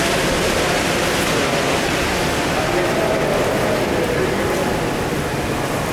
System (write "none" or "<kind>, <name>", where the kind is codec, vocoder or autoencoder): none